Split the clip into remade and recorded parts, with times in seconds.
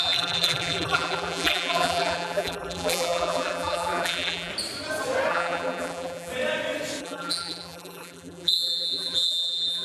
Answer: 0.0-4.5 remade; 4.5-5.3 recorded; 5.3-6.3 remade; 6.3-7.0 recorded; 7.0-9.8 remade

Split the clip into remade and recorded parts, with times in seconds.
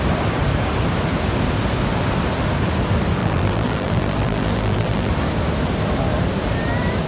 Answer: 0.0-3.2 recorded; 3.2-5.1 remade; 5.1-7.1 recorded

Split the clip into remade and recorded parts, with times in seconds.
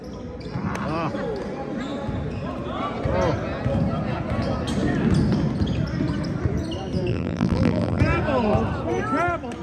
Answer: 0.0-7.1 recorded; 7.1-8.0 remade; 8.0-9.6 recorded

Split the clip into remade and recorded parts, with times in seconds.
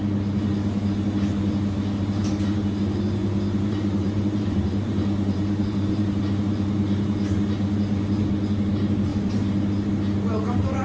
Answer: 0.0-3.2 recorded; 3.2-6.2 remade; 6.2-9.1 recorded; 9.1-9.9 remade; 9.9-10.8 recorded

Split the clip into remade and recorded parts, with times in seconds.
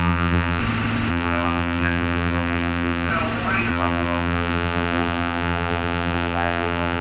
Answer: 0.0-0.6 remade; 0.6-1.1 recorded; 1.1-3.1 remade; 3.1-3.7 recorded; 3.7-7.0 remade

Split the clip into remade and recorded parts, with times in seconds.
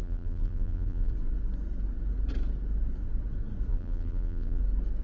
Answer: 0.0-1.1 remade; 1.1-3.7 recorded; 3.7-4.6 remade; 4.6-5.0 recorded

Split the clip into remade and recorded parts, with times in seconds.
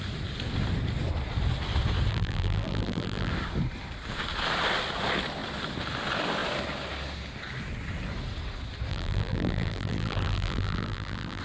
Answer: 0.0-2.1 recorded; 2.1-3.3 remade; 3.3-8.9 recorded; 8.9-11.4 remade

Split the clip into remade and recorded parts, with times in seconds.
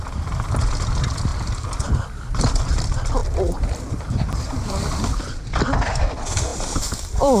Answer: 0.0-7.4 remade